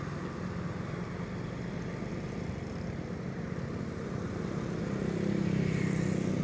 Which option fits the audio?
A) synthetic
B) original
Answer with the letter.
B